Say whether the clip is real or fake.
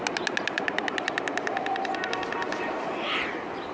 real